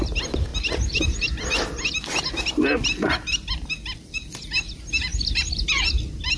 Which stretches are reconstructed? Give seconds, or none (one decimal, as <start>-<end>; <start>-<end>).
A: none